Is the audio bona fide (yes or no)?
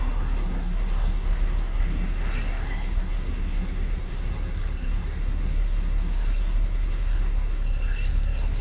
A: no